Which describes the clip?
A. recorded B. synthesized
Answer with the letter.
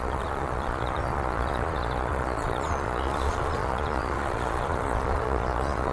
B